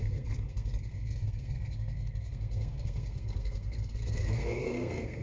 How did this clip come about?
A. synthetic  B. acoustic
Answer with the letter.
A